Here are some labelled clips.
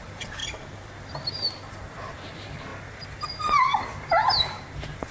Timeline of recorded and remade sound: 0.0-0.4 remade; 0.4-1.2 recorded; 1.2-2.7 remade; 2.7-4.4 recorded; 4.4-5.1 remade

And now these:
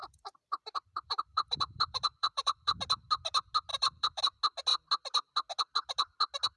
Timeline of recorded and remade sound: 0.0-2.8 remade; 2.8-3.7 recorded; 3.7-4.2 remade; 4.2-6.6 recorded

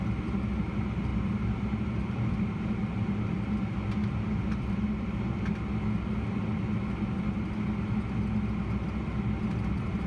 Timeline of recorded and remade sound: 0.0-1.1 recorded; 1.1-2.6 remade; 2.6-4.0 recorded; 4.0-5.5 remade; 5.5-10.1 recorded

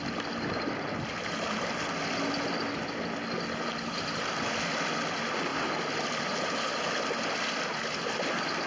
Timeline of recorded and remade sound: 0.0-8.7 recorded

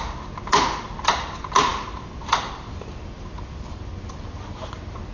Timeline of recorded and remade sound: 0.0-1.7 recorded; 1.7-3.8 remade; 3.8-5.1 recorded

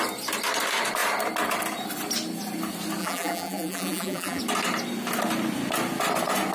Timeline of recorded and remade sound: 0.0-3.0 recorded; 3.0-4.4 remade; 4.4-6.5 recorded